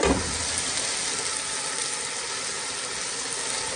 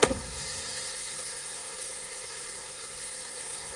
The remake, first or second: second